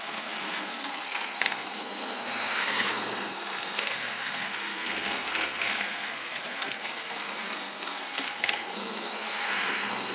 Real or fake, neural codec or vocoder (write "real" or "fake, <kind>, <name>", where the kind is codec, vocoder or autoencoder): fake, codec, SNAC